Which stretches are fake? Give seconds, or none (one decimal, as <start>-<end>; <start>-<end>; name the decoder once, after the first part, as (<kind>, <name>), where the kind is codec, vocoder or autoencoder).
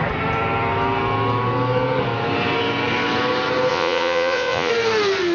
3.7-4.7 (vocoder, Vocos)